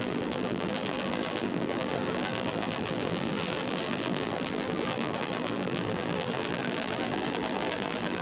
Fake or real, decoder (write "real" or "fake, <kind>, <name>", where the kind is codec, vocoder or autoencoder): fake, vocoder, BigVGAN v2